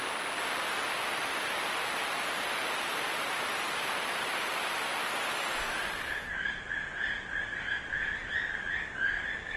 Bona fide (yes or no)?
yes